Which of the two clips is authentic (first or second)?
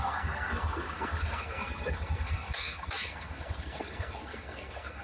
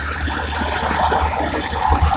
second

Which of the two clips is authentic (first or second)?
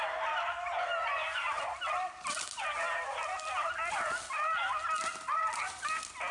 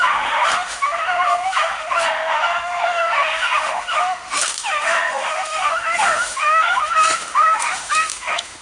first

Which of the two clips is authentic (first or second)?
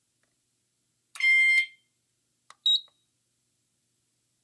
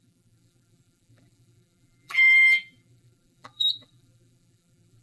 first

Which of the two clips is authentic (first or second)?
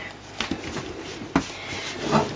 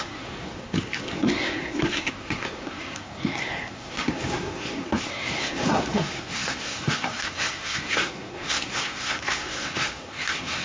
first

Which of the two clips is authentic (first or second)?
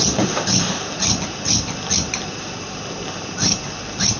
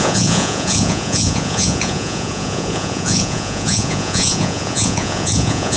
first